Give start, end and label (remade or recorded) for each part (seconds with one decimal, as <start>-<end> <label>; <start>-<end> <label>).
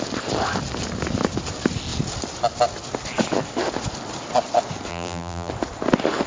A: 0.0-4.9 recorded; 4.9-5.5 remade; 5.5-6.3 recorded